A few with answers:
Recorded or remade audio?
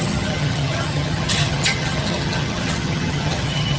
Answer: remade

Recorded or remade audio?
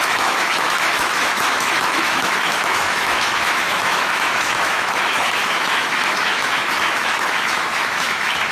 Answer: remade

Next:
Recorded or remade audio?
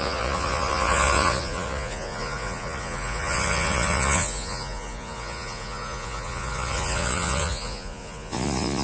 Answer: remade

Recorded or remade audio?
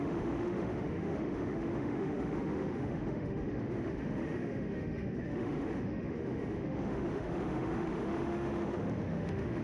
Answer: remade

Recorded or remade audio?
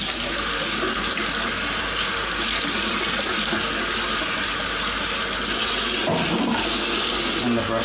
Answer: recorded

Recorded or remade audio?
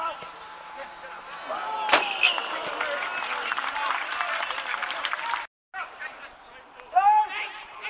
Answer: recorded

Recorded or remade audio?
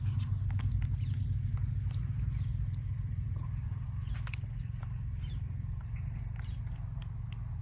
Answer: recorded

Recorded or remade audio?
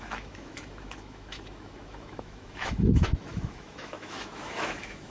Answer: remade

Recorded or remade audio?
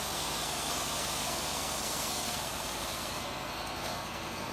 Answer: remade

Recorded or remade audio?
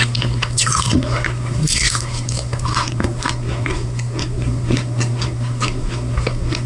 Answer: remade